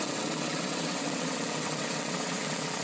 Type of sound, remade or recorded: remade